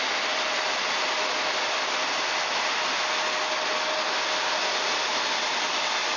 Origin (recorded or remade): recorded